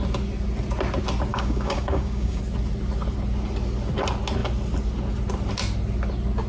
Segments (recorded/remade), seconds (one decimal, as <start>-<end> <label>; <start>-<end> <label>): 0.0-1.3 recorded; 1.3-2.4 remade; 2.4-6.5 recorded